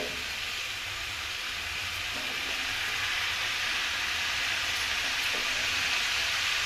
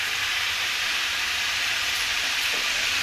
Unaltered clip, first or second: first